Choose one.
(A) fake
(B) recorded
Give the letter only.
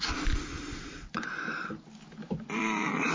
B